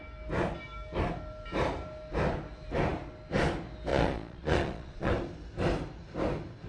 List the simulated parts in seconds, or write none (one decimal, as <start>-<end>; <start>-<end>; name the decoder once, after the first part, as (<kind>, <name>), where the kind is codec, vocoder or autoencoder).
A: 3.9-5.1 (vocoder, Vocos)